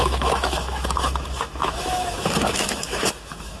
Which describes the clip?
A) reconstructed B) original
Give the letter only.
A